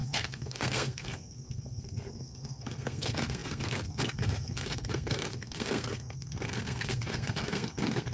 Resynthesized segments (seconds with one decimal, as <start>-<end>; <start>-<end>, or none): 0.0-8.1